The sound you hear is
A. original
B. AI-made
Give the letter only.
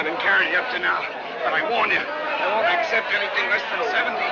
A